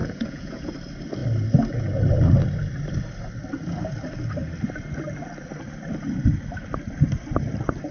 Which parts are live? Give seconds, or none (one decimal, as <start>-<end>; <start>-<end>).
0.7-7.9

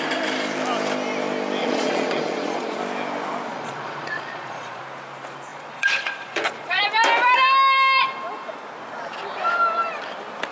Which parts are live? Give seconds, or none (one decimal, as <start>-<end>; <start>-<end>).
0.0-1.6; 2.8-3.5; 4.8-5.5; 6.8-10.5

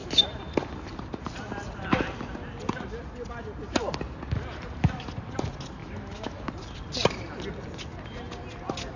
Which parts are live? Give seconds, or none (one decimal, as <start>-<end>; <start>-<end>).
0.0-5.8; 6.5-9.0